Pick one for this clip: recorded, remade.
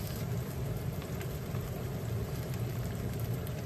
remade